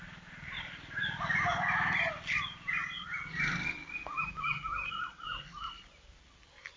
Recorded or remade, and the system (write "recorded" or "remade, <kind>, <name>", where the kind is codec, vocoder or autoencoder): recorded